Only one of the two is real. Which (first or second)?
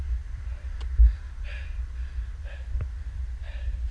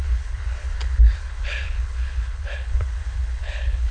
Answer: first